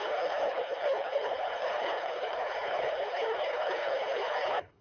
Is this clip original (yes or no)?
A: no